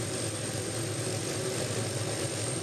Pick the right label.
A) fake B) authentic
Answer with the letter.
B